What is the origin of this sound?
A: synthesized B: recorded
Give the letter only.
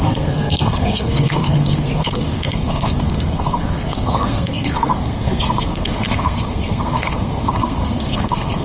A